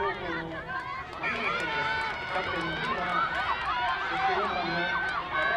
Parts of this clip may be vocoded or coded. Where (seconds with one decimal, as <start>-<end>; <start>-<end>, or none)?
none